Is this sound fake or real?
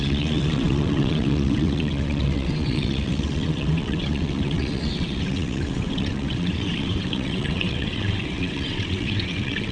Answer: fake